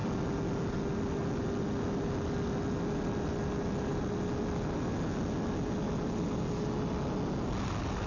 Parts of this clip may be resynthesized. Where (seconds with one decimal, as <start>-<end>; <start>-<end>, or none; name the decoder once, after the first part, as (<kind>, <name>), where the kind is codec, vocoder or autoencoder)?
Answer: none